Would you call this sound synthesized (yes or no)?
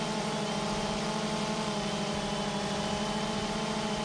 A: yes